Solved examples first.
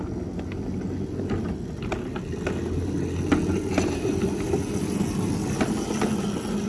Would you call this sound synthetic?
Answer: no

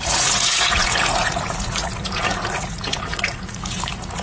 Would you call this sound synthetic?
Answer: yes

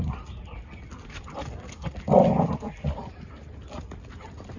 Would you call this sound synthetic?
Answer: no